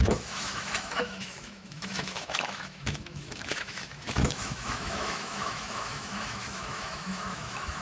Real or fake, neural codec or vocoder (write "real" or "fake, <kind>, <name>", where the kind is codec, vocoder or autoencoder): fake, autoencoder, DAC-VAE